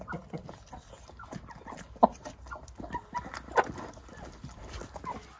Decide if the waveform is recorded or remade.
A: recorded